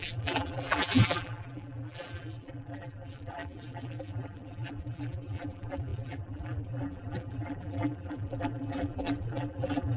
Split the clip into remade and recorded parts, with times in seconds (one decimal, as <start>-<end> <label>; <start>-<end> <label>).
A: 0.0-10.0 remade